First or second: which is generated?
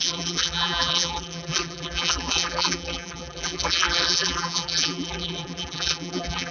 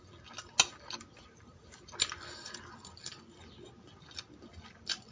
first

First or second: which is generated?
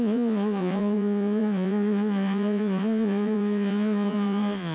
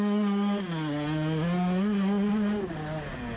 first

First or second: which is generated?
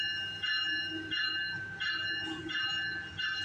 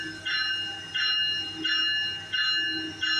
first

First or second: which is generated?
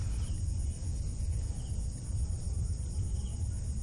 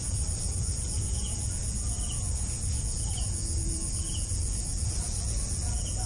second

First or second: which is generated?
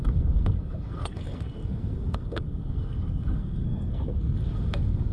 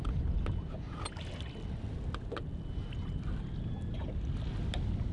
first